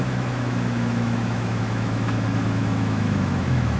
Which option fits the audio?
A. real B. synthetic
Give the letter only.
B